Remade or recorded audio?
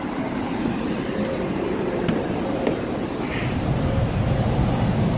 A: remade